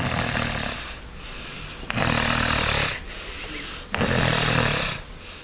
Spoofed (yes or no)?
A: no